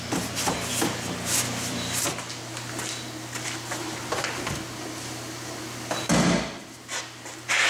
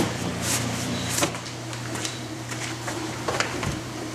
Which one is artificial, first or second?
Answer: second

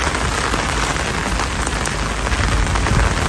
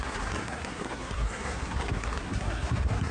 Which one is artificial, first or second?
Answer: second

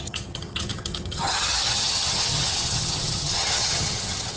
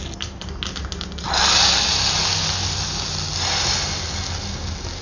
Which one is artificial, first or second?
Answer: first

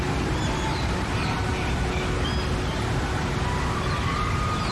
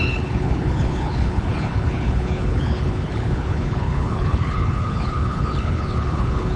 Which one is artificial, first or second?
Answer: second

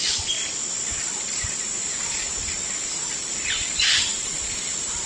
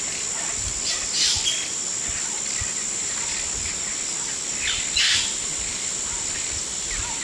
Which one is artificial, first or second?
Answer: first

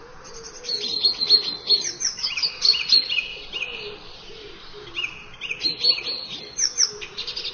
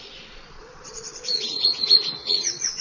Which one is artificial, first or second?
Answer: second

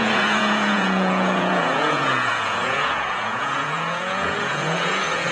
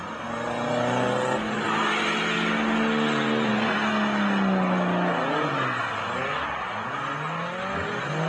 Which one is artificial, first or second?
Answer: first